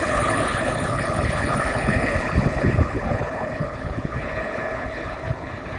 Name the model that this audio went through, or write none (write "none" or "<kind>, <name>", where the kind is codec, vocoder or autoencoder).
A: codec, HILCodec